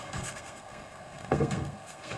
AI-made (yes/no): yes